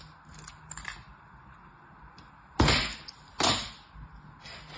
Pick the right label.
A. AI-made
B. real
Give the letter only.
B